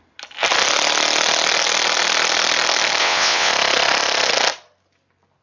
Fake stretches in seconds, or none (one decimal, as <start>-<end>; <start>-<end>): 3.0-3.5